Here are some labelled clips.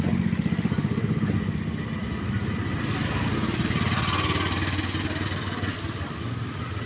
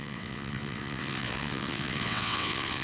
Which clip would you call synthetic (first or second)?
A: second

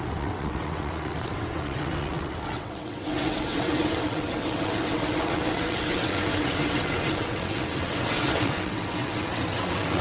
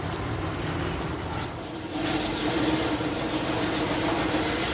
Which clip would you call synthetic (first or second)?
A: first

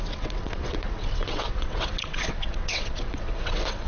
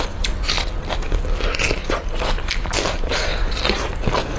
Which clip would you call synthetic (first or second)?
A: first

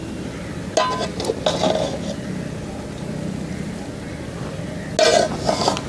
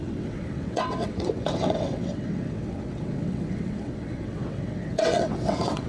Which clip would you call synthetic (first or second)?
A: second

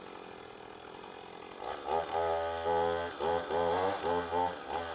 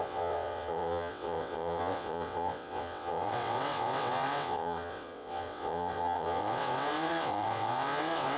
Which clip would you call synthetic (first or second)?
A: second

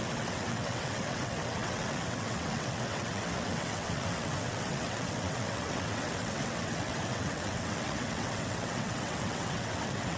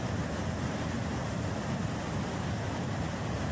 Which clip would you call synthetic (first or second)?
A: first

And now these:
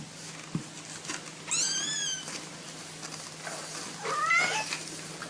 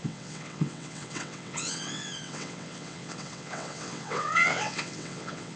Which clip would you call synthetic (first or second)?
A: second